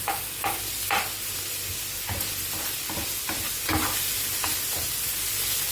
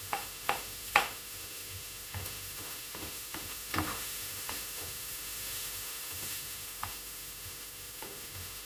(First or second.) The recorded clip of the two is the first